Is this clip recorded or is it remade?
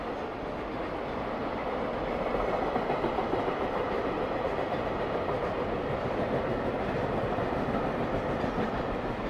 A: recorded